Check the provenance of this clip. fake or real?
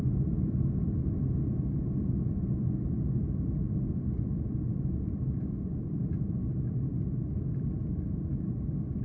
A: real